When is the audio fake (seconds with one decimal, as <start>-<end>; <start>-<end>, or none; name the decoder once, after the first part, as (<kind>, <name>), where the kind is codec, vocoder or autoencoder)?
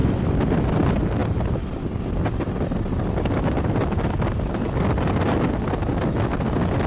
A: none